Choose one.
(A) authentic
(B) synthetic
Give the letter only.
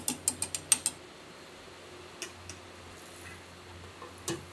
A